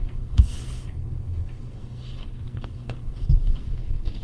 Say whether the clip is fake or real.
fake